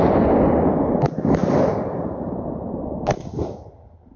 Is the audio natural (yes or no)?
yes